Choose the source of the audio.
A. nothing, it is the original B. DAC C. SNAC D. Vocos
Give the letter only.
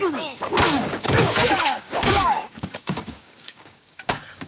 B